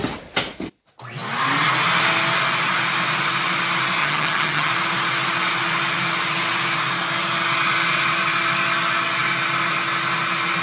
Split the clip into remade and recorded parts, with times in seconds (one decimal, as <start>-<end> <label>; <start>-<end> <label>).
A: 0.0-4.0 recorded; 4.0-4.7 remade; 4.7-10.6 recorded

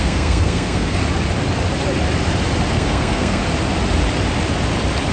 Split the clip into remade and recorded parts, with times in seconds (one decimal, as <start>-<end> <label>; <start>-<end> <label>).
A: 0.0-1.0 remade; 1.0-2.7 recorded; 2.7-3.4 remade; 3.4-5.1 recorded

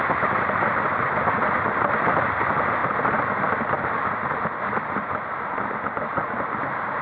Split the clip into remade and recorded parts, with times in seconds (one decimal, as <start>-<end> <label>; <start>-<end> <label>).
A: 0.0-7.0 recorded

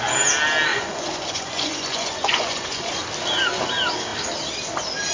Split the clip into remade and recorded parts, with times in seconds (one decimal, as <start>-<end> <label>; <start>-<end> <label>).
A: 0.0-0.7 recorded; 0.7-2.9 remade; 2.9-5.1 recorded

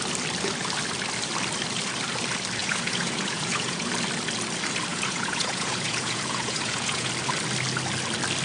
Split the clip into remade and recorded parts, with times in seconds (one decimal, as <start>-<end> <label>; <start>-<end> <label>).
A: 0.0-2.6 recorded; 2.6-3.9 remade; 3.9-4.9 recorded; 4.9-7.1 remade; 7.1-8.4 recorded

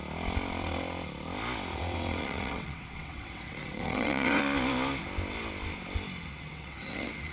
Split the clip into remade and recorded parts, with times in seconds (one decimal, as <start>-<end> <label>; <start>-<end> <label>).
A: 0.0-1.7 recorded; 1.7-4.4 remade; 4.4-6.3 recorded; 6.3-7.3 remade